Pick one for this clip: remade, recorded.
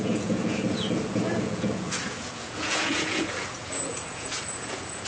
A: remade